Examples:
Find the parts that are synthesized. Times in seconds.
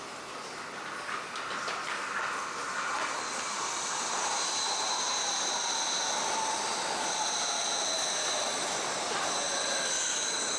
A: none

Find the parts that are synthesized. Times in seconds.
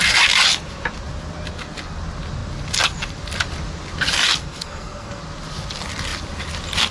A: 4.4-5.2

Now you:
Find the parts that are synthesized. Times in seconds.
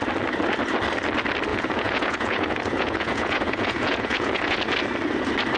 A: 1.5-4.6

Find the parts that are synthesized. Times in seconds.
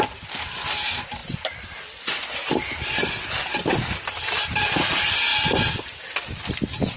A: none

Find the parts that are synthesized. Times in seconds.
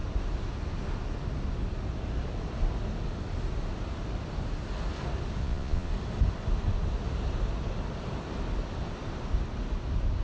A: 5.4-5.9